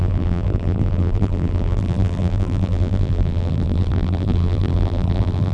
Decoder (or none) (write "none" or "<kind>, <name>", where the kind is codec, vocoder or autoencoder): vocoder, BigVGAN v2